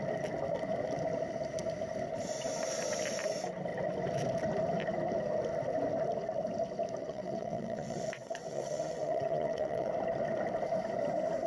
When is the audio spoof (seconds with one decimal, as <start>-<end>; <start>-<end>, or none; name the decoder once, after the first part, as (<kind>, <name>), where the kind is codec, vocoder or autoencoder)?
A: 7.0-9.9 (vocoder, WaveNeXt)